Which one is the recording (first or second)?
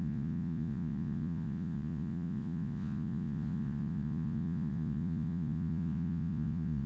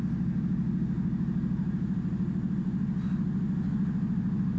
second